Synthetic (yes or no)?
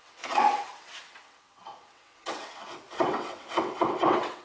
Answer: yes